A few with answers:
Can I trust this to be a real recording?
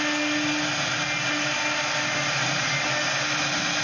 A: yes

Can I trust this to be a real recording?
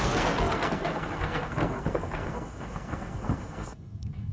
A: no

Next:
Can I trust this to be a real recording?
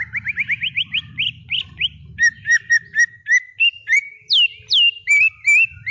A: yes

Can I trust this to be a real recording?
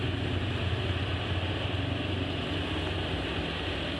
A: yes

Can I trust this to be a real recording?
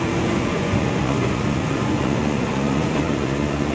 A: no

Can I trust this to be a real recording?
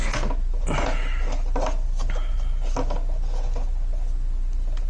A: yes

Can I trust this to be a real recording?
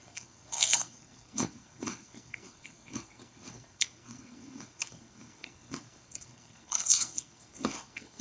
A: no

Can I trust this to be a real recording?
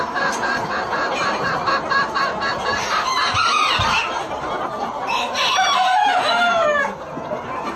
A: yes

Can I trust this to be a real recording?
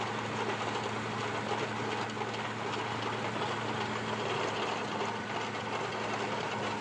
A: yes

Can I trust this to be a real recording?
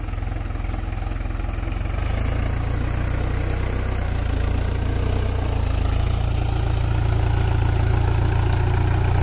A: yes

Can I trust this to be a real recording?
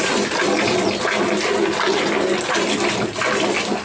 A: yes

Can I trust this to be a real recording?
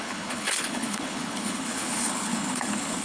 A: no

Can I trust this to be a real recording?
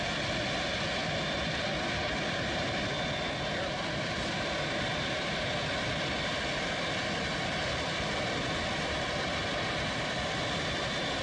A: yes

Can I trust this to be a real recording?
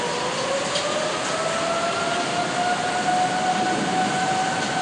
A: yes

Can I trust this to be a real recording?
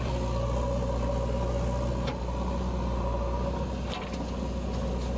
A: yes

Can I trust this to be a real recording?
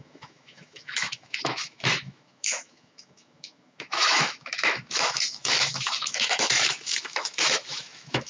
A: no